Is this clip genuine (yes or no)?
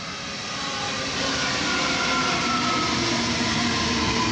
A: yes